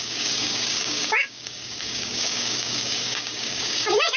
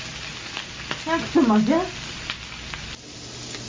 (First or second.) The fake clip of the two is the first